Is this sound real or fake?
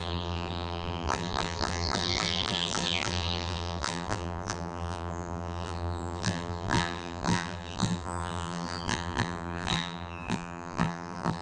fake